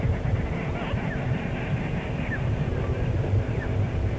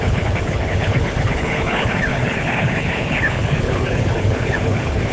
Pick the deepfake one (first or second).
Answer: second